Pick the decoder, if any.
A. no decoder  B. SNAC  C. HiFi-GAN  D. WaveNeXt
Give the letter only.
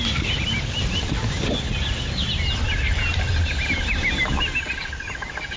A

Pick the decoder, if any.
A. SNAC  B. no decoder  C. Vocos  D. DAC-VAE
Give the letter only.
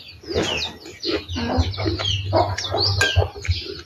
B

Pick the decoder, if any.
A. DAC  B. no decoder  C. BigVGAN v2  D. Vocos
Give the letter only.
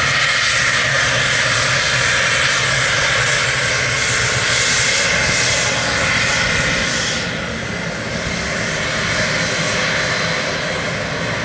B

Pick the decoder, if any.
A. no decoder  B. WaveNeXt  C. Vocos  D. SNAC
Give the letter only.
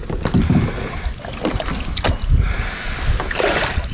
A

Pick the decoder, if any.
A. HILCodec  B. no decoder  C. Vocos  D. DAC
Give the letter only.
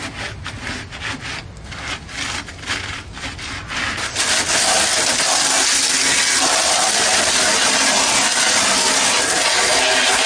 B